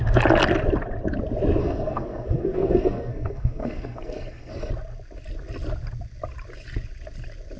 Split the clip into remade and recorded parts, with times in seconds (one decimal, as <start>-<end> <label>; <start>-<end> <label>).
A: 0.0-1.6 recorded; 1.6-4.7 remade; 4.7-7.6 recorded